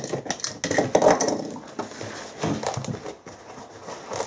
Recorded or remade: recorded